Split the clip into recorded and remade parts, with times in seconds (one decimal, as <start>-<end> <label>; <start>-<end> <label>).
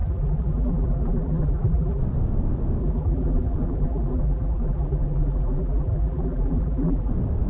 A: 0.0-2.0 remade; 2.0-2.8 recorded; 2.8-7.1 remade; 7.1-7.5 recorded